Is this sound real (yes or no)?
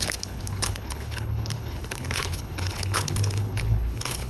no